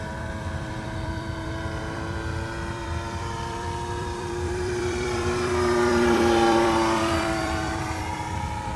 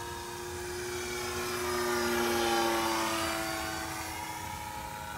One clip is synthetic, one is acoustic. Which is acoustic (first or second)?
second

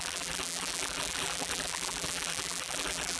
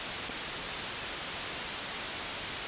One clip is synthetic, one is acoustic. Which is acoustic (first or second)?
second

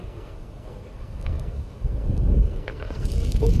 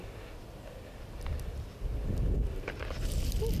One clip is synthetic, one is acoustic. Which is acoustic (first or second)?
second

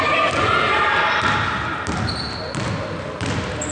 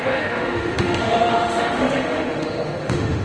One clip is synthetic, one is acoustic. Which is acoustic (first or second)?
first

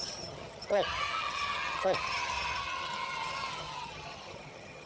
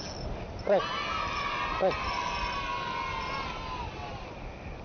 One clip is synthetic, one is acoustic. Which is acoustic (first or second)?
second